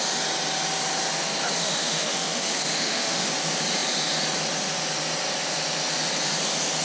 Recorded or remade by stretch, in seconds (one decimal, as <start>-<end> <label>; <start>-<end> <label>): 0.0-1.6 recorded; 1.6-3.3 remade; 3.3-6.8 recorded